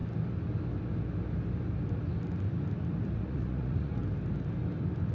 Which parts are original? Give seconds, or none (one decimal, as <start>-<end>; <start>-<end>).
0.0-3.1; 4.0-5.1